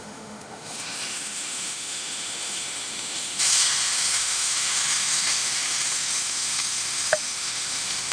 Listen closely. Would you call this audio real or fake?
fake